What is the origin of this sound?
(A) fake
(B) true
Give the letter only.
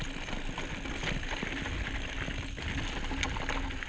B